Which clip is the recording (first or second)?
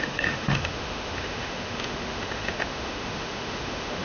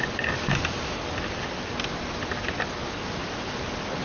second